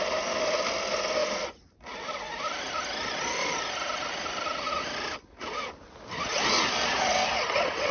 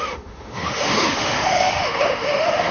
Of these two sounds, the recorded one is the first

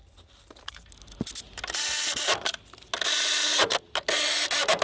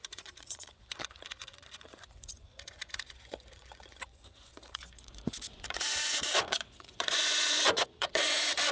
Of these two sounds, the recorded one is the first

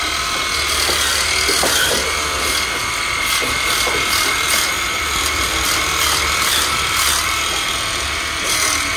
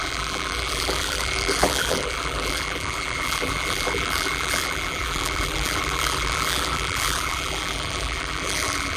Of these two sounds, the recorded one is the first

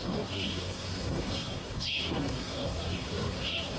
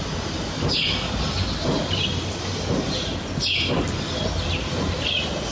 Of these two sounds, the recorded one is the second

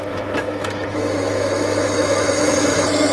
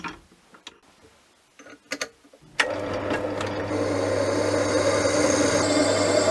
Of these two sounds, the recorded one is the second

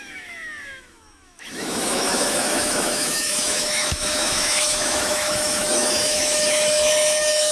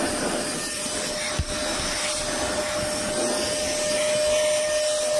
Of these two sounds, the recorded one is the second